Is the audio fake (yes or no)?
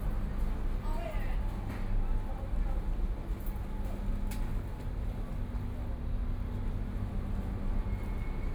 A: no